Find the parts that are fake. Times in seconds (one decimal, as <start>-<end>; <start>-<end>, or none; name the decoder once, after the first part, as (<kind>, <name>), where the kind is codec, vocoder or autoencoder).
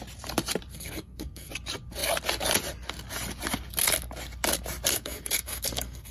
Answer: 0.7-1.5 (codec, SNAC); 4.9-6.1